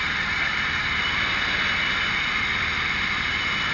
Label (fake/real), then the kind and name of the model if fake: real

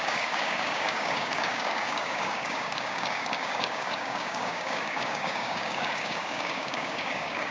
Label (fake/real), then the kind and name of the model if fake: fake, codec, DAC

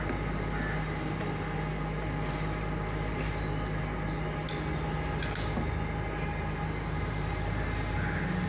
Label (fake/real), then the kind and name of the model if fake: real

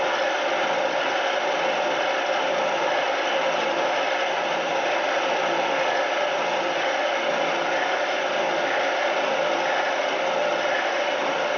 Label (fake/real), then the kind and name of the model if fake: real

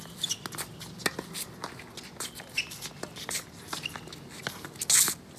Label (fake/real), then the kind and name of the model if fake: real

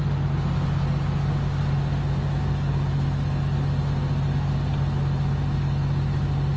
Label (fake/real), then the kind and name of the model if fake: real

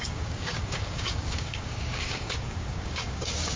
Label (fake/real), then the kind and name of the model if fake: fake, codec, DAC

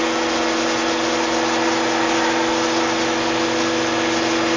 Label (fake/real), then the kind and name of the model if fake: real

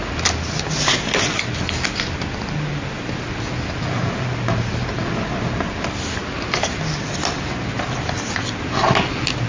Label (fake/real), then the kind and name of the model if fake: real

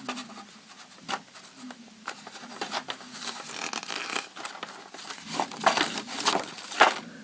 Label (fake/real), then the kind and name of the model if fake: real